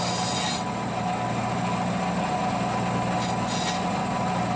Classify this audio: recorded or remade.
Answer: recorded